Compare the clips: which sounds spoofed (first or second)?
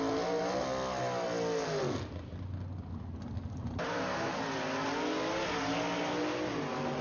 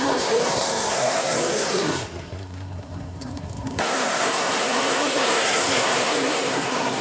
second